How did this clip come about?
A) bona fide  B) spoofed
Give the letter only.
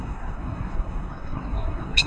B